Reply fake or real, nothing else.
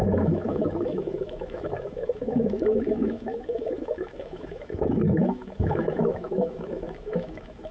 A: fake